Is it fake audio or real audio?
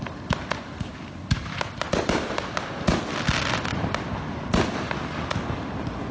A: real